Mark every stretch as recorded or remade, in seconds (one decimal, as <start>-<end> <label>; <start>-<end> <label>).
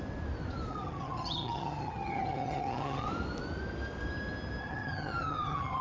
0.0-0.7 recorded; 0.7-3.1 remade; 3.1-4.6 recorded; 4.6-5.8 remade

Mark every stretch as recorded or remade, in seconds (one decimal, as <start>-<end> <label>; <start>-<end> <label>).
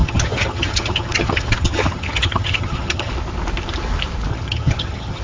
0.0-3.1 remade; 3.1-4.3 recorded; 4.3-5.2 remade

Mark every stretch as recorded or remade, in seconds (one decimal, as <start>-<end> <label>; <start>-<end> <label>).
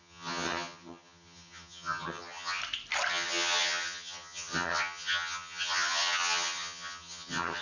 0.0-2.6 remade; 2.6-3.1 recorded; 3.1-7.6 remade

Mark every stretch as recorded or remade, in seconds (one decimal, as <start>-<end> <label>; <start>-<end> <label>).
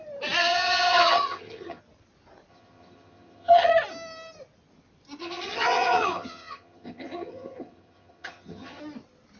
0.0-0.4 recorded; 0.4-1.8 remade; 1.8-2.5 recorded; 2.5-3.7 remade; 3.7-5.2 recorded; 5.2-8.8 remade; 8.8-9.4 recorded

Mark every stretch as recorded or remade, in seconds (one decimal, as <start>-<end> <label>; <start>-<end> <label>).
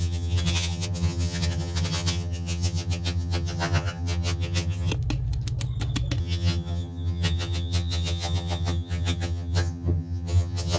0.0-4.9 remade; 4.9-6.2 recorded; 6.2-10.8 remade